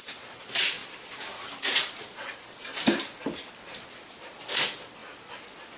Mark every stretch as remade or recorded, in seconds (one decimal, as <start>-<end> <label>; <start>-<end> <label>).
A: 0.0-0.8 recorded; 0.8-2.2 remade; 2.2-5.8 recorded